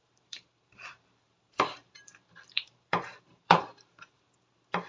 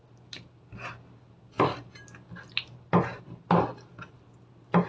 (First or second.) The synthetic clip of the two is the first